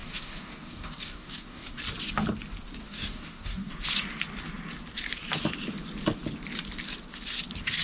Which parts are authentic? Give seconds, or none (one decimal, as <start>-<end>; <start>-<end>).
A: 1.8-2.8; 3.7-7.8